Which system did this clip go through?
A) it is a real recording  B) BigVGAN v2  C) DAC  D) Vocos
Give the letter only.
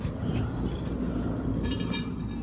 A